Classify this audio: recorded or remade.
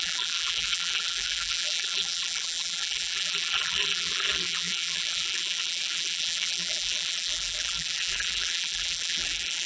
remade